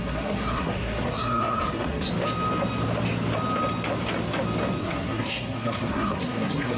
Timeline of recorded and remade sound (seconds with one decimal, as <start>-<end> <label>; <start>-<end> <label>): 0.0-2.1 remade; 2.1-4.8 recorded; 4.8-6.8 remade

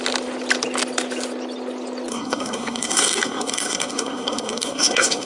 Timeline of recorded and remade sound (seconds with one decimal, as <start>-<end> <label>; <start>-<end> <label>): 0.0-2.1 recorded; 2.1-5.3 remade

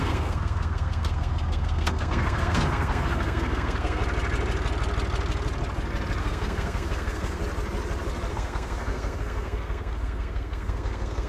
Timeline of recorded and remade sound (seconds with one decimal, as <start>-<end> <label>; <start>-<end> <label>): 0.0-4.0 remade; 4.0-6.2 recorded; 6.2-7.4 remade; 7.4-8.3 recorded; 8.3-11.3 remade